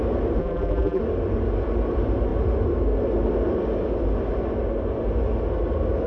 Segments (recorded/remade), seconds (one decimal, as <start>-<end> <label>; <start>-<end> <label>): 0.0-0.4 recorded; 0.4-1.0 remade; 1.0-6.1 recorded

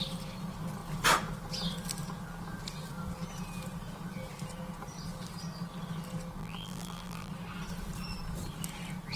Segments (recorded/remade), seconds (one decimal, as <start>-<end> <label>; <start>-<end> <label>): 0.0-6.4 recorded; 6.4-7.3 remade; 7.3-9.2 recorded

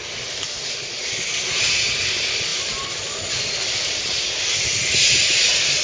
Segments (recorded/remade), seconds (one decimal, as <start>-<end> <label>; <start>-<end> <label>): 0.0-5.8 recorded

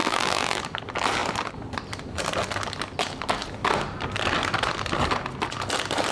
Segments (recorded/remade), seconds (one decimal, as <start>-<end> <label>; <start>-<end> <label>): 0.0-0.6 remade; 0.6-6.1 recorded